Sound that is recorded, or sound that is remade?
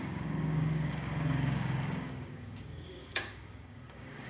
remade